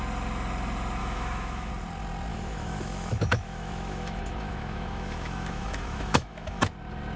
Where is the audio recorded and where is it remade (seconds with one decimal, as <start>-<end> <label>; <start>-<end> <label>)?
0.0-1.0 recorded; 1.0-1.7 remade; 1.7-2.3 recorded; 2.3-6.6 remade; 6.6-7.2 recorded